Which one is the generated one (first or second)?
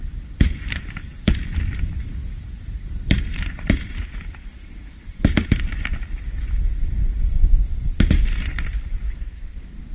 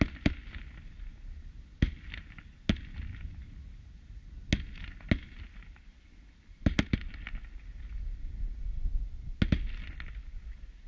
first